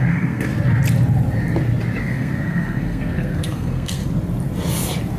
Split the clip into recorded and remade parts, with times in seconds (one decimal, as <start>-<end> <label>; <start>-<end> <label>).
0.0-0.5 remade; 0.5-2.0 recorded; 2.0-4.0 remade; 4.0-5.2 recorded